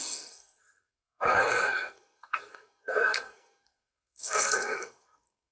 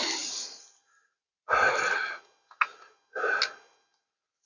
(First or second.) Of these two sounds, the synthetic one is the first